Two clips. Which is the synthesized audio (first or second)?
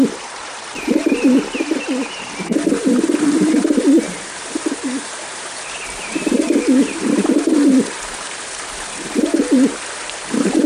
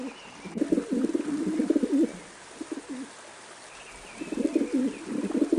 first